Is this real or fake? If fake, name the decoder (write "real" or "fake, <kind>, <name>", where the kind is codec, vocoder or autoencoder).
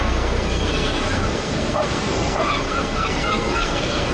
fake, codec, SNAC